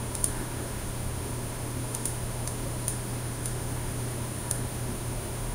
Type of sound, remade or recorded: remade